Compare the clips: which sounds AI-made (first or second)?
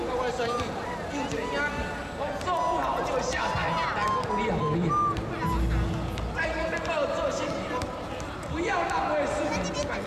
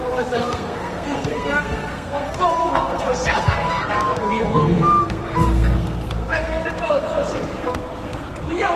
second